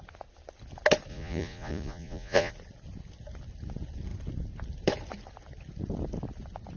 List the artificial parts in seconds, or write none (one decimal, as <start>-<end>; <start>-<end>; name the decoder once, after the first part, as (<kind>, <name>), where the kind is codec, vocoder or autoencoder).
1.1-2.5 (vocoder, Vocos)